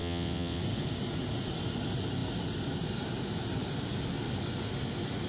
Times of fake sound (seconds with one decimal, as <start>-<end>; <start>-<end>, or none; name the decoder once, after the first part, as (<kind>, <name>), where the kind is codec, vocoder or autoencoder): 0.0-0.6 (vocoder, WaveNeXt)